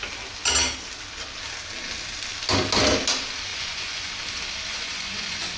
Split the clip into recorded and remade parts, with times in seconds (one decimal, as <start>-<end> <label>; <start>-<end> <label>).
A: 0.0-3.5 recorded; 3.5-4.1 remade; 4.1-4.7 recorded; 4.7-5.6 remade